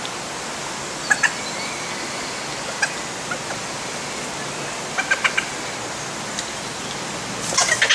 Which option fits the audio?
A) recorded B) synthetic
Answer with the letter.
A